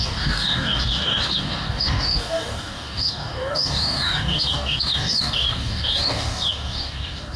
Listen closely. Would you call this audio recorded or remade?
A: remade